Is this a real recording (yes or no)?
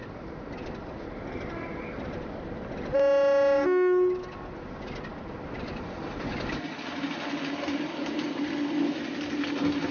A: yes